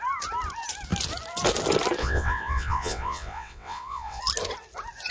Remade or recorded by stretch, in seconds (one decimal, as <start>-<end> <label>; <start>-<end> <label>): 0.0-2.0 recorded; 2.0-4.2 remade; 4.2-5.1 recorded